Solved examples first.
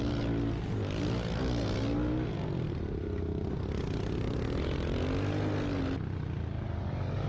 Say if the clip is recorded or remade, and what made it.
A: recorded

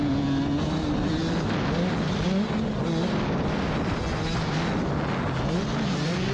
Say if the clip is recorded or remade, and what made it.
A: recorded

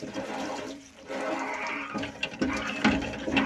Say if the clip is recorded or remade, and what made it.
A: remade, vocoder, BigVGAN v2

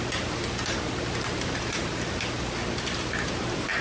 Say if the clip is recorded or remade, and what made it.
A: recorded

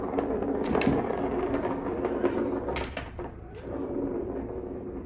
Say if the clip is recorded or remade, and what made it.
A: recorded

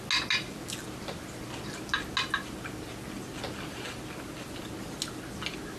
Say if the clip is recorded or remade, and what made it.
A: recorded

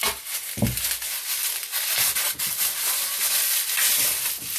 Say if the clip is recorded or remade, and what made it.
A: recorded